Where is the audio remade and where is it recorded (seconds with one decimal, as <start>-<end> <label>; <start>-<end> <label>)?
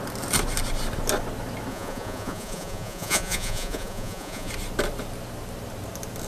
0.0-1.7 recorded; 1.7-4.5 remade; 4.5-6.3 recorded